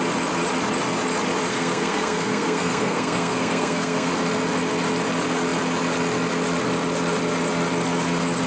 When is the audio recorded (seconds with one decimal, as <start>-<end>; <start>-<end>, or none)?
0.0-1.5; 4.1-8.5